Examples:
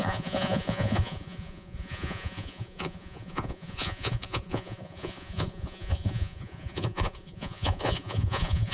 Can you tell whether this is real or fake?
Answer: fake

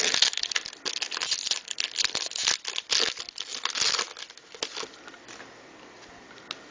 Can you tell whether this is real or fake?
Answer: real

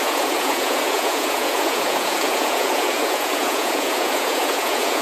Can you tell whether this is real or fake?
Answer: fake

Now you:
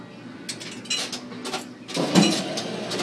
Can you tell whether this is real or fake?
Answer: real